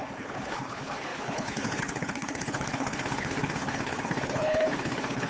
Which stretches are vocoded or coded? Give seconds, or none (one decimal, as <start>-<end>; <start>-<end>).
0.0-5.3